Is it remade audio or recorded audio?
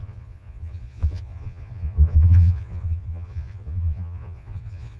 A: remade